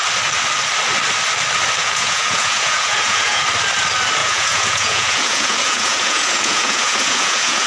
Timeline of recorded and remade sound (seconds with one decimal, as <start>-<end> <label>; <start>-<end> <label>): 0.0-1.8 recorded; 1.8-3.4 remade; 3.4-4.2 recorded; 4.2-7.7 remade